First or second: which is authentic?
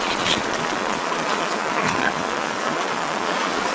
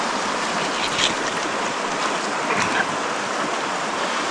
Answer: second